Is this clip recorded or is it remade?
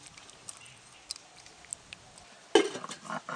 recorded